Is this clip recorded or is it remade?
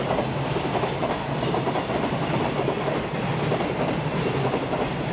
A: recorded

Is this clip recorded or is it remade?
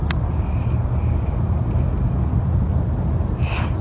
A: recorded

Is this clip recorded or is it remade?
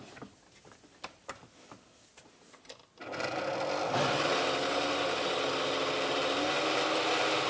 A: recorded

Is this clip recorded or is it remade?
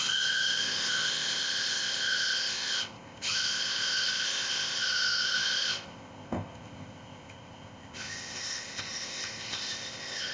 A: remade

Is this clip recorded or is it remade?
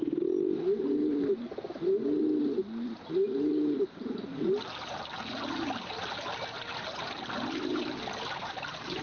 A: recorded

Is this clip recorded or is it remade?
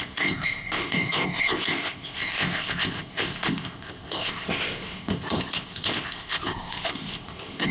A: remade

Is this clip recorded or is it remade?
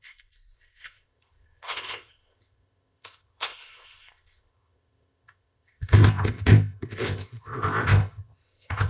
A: remade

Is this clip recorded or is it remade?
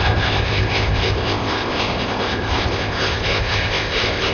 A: remade